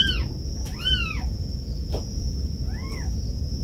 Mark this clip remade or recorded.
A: recorded